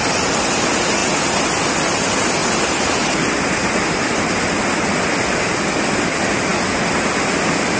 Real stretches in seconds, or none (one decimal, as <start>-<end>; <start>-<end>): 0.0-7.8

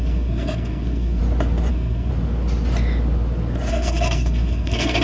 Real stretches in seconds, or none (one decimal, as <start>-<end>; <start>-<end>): 1.2-1.7; 2.1-3.7

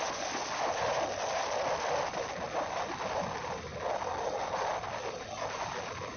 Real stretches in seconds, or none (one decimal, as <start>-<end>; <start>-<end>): 0.0-6.2

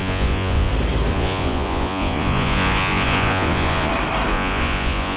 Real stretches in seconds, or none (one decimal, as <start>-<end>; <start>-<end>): 0.7-1.1; 3.9-4.3